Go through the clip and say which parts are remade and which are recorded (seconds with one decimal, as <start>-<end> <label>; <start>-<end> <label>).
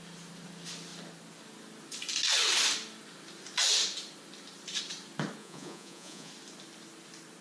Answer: 0.0-5.4 recorded; 5.4-6.3 remade; 6.3-7.4 recorded